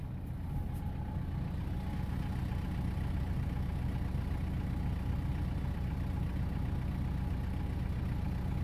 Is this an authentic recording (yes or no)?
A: yes